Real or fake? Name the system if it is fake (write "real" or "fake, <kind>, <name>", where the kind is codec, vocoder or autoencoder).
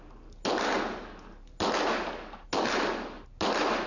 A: real